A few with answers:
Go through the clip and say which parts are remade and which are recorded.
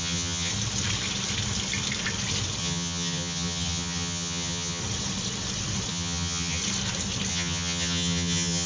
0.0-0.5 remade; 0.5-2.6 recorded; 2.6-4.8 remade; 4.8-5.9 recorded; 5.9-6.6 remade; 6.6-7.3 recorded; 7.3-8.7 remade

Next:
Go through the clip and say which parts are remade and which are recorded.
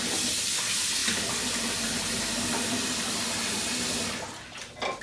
0.0-5.0 recorded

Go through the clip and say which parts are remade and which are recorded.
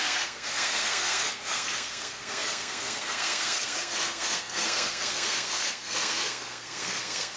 0.0-7.4 remade